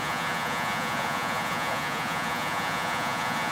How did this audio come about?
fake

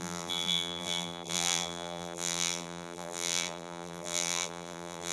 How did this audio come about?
fake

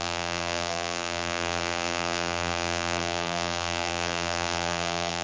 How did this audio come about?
fake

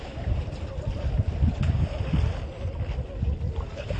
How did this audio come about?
real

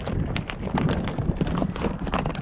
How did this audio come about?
real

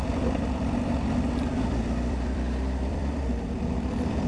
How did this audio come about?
fake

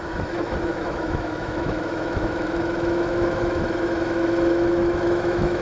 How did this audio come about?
fake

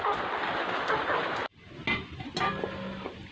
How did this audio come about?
real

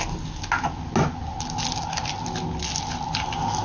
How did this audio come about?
real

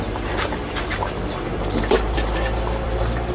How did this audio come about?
fake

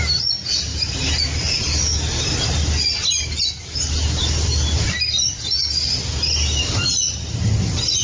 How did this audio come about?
real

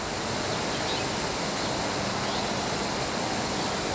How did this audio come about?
real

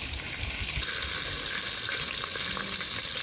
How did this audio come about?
real